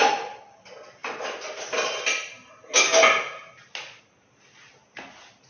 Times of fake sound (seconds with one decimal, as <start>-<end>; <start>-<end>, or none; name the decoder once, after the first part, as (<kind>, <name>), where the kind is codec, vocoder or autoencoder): none